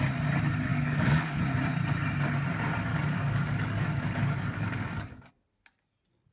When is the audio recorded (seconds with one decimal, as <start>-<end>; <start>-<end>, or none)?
0.0-0.7; 1.4-2.9; 5.3-6.3